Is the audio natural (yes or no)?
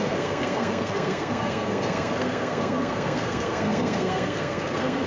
no